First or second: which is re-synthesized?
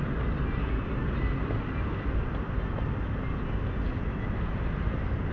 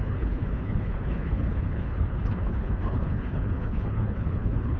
second